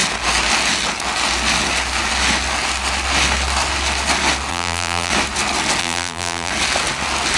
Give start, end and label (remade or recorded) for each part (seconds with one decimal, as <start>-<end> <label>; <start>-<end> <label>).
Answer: 0.0-4.5 recorded; 4.5-5.1 remade; 5.1-5.8 recorded; 5.8-6.5 remade; 6.5-7.4 recorded